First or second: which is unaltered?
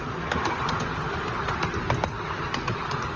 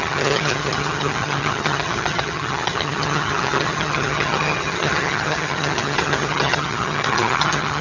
first